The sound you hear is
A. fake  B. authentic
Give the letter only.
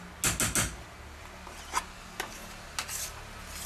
B